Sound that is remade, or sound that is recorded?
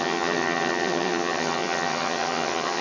remade